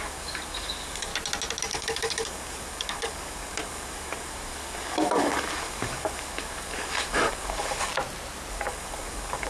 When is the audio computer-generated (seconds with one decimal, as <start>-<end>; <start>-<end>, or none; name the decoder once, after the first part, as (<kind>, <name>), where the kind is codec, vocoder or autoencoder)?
0.0-1.1 (codec, DAC); 1.7-7.9; 8.5-9.5